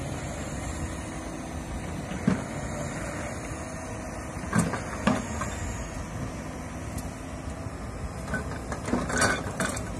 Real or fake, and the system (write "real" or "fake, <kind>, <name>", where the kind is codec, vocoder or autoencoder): real